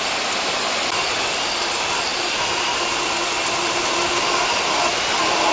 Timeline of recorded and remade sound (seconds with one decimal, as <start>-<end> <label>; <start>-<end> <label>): 0.0-5.5 recorded